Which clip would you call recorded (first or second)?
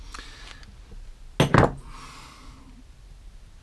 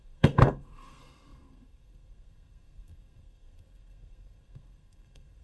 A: first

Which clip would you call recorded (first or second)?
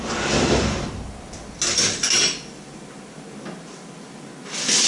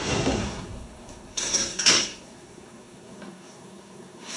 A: first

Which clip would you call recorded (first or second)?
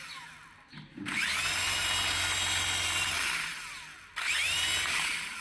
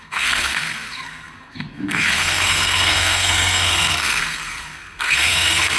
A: first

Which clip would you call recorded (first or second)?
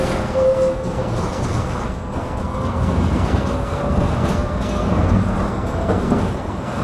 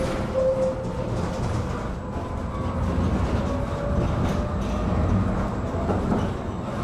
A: second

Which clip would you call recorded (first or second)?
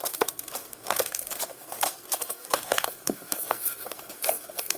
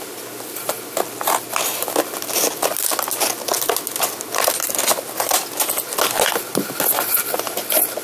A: second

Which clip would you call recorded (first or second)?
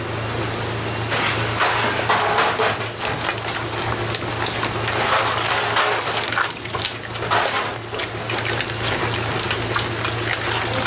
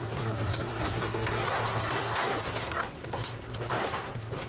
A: first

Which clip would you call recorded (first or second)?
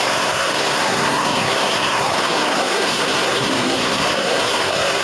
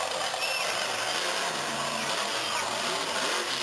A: second